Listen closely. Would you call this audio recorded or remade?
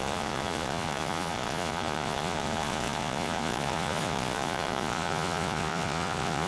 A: remade